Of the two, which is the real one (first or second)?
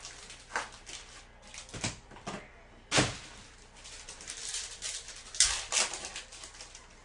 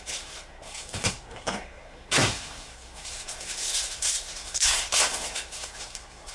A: first